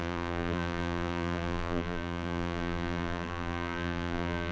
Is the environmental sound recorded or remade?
remade